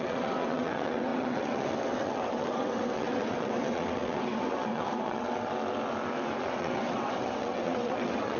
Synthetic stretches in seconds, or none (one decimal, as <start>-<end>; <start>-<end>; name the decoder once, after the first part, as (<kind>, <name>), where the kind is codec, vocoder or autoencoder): 0.0-5.5 (vocoder, WaveNeXt); 6.4-8.4